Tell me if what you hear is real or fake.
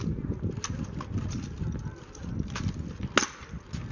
real